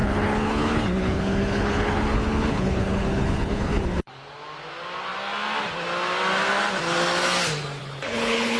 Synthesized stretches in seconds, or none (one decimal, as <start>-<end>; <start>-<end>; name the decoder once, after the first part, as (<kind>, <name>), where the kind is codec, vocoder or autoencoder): 0.0-4.1 (codec, HILCodec); 7.8-8.6